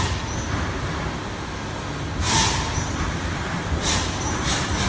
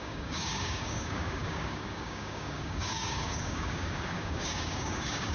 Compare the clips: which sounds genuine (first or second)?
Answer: first